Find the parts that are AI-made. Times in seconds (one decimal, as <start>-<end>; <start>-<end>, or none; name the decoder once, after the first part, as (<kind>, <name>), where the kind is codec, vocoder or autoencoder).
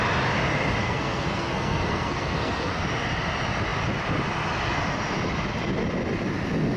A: 0.8-2.7 (codec, SNAC)